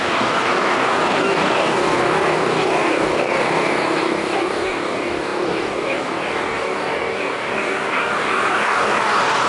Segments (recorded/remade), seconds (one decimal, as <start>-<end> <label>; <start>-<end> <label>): 0.0-9.5 remade

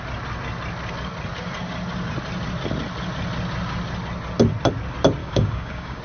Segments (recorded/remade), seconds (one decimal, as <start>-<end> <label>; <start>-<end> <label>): 0.0-5.2 recorded; 5.2-6.0 remade

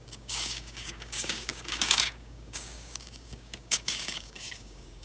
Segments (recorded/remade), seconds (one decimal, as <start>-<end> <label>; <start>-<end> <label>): 0.0-5.0 remade

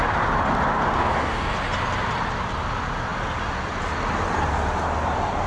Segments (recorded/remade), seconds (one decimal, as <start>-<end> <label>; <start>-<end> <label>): 0.0-1.0 recorded; 1.0-1.5 remade; 1.5-5.5 recorded